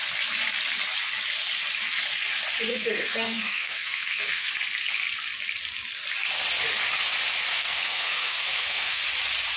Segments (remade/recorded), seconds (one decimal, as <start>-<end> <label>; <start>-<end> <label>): 0.0-2.7 recorded; 2.7-4.5 remade; 4.5-7.5 recorded; 7.5-9.0 remade; 9.0-9.6 recorded